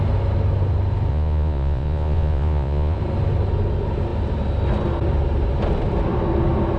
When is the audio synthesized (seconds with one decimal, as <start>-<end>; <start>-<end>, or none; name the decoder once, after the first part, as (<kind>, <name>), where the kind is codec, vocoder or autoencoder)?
1.1-3.0 (vocoder, Vocos)